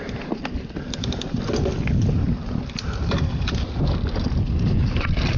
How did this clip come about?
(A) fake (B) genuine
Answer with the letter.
B